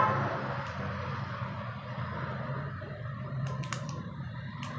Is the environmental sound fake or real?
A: real